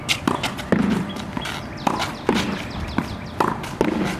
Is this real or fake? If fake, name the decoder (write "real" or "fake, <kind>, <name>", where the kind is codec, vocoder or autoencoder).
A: real